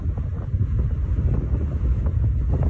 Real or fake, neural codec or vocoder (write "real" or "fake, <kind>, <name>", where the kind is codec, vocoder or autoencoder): real